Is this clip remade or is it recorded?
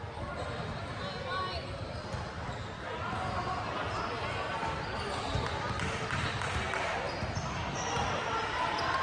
recorded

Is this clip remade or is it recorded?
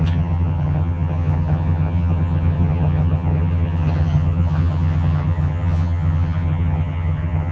remade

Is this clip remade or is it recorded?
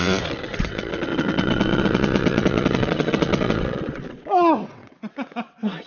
remade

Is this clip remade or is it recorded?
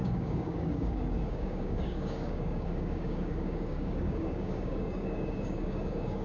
remade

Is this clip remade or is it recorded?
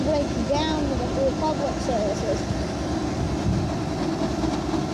recorded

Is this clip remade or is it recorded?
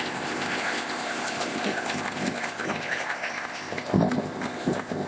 remade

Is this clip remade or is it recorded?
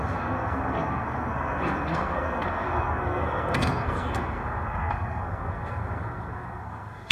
remade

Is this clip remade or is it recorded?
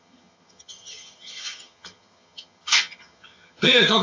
remade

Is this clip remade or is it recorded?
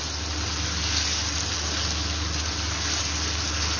recorded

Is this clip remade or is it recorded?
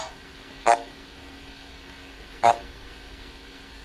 remade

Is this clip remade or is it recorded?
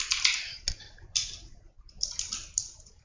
recorded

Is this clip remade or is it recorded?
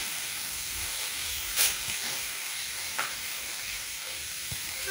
remade